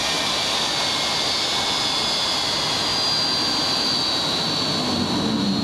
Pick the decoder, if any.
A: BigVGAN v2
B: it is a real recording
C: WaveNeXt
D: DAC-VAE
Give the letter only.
B